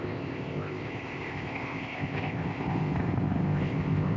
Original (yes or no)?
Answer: no